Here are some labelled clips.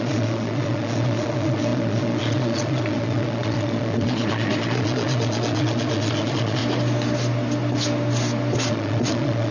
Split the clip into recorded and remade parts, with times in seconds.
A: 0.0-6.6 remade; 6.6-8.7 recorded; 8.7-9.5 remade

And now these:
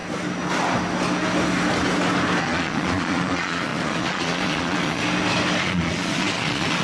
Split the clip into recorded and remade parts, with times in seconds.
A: 0.0-2.4 recorded; 2.4-5.0 remade; 5.0-5.6 recorded; 5.6-6.8 remade

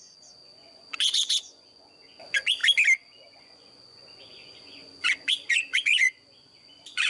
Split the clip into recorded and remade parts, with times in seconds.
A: 0.0-2.6 remade; 2.6-3.3 recorded; 3.3-7.1 remade